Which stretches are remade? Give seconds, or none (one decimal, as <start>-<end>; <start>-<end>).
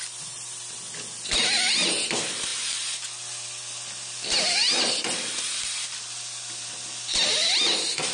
none